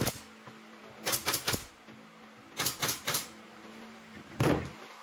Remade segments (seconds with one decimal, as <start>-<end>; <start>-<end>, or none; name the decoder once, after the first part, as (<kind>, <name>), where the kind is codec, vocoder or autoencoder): 2.8-4.6 (vocoder, BigVGAN v2)